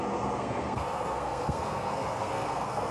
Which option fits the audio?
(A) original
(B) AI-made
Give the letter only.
B